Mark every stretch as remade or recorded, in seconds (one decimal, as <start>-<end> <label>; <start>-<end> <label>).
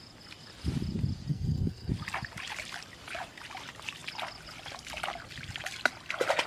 0.0-1.3 recorded; 1.3-1.9 remade; 1.9-6.5 recorded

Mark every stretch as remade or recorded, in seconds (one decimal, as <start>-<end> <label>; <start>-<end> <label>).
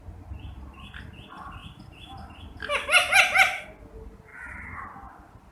0.0-5.5 recorded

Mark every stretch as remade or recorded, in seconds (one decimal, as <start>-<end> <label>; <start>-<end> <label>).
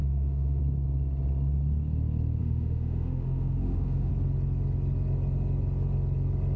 0.0-0.6 remade; 0.6-2.4 recorded; 2.4-4.1 remade; 4.1-6.6 recorded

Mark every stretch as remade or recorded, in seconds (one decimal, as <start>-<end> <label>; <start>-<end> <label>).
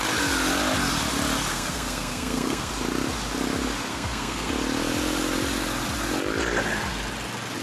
0.0-1.5 recorded; 1.5-2.7 remade; 2.7-3.9 recorded; 3.9-4.5 remade; 4.5-7.6 recorded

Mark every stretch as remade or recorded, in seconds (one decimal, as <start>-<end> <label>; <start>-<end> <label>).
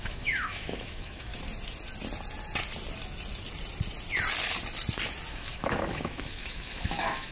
0.0-1.3 remade; 1.3-5.3 recorded; 5.3-7.3 remade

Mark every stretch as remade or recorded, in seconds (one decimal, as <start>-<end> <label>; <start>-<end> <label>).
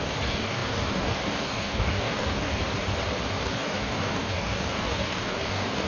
0.0-2.6 remade; 2.6-3.3 recorded; 3.3-5.9 remade